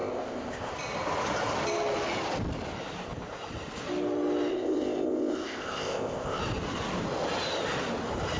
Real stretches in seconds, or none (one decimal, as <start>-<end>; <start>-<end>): 0.7-4.5; 6.4-8.4